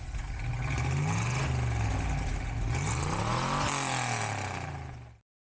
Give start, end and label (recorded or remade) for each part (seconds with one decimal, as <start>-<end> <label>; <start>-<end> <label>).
0.0-5.4 recorded